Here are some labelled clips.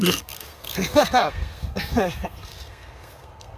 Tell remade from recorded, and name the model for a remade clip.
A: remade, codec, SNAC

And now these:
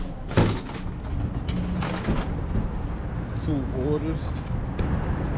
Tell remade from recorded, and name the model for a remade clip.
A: recorded